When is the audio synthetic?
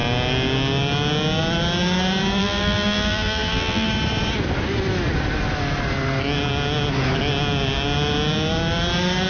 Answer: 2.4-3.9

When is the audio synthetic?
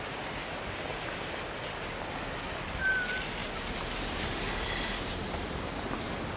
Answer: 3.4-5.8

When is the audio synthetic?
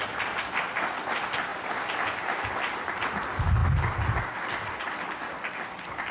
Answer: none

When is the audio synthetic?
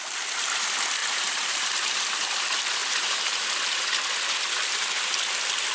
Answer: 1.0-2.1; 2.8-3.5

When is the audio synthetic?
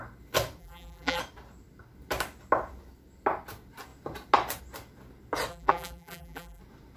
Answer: 0.6-1.2; 5.5-6.6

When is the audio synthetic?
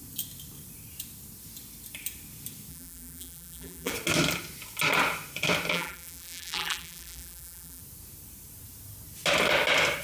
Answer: 2.7-3.9; 5.7-7.8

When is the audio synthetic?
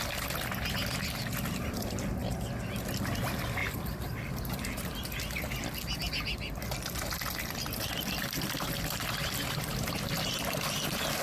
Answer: none